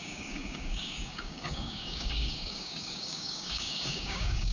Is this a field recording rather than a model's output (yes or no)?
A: no